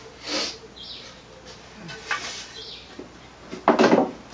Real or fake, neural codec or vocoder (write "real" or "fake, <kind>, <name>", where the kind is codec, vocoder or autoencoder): real